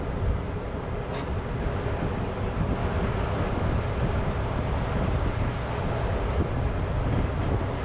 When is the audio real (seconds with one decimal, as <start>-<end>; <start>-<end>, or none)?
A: 0.0-7.8